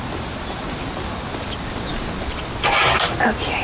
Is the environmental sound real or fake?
real